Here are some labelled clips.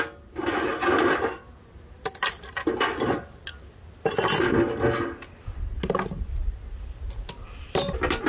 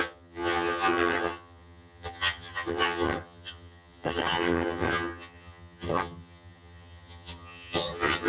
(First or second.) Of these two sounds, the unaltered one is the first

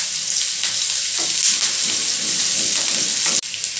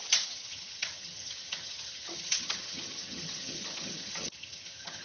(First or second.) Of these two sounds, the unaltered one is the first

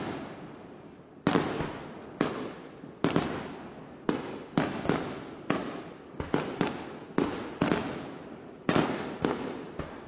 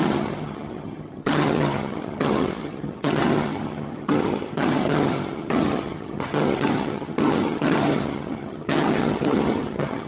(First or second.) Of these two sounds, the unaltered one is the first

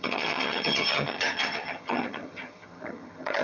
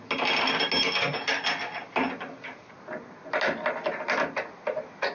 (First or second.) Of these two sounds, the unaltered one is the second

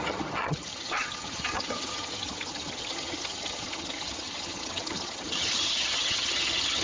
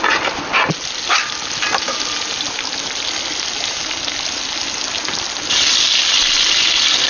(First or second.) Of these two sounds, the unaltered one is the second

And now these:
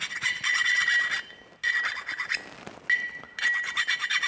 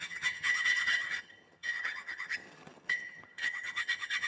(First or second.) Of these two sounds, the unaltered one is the first